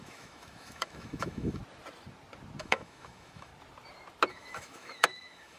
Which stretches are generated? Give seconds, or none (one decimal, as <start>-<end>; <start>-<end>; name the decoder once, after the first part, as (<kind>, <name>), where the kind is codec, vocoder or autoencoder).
0.0-1.6 (autoencoder, DAC-VAE); 2.6-3.5; 4.3-5.6